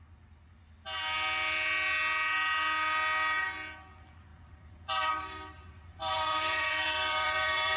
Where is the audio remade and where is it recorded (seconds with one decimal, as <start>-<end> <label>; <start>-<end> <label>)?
0.0-4.3 recorded; 4.3-5.1 remade; 5.1-6.0 recorded; 6.0-7.8 remade